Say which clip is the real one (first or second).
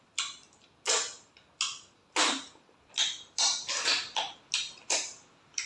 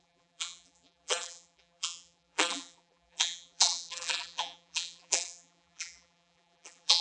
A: first